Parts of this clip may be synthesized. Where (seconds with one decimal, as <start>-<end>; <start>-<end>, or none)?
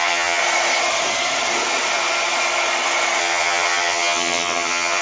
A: 0.0-0.4; 3.2-5.0